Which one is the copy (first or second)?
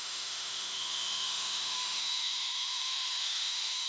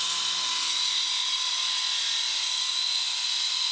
first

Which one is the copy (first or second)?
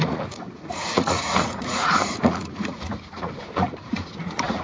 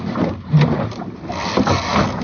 first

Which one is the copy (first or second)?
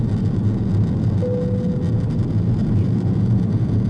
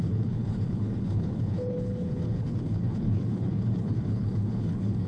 second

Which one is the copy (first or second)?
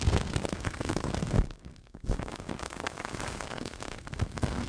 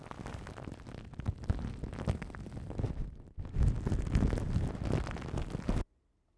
first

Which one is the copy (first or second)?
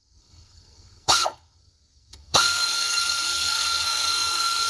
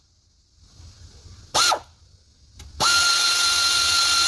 first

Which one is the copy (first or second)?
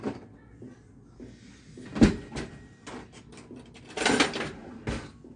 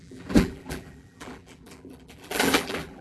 second